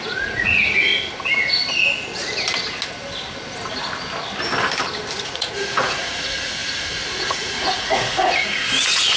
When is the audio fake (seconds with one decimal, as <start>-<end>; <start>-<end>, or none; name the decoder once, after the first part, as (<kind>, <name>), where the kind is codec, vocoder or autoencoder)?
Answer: 0.0-0.9 (vocoder, Vocos); 5.2-9.2